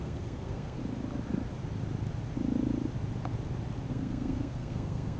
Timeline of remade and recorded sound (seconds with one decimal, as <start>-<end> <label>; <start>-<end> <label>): 0.0-0.8 remade; 0.8-3.9 recorded; 3.9-5.2 remade